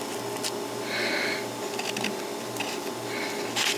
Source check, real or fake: real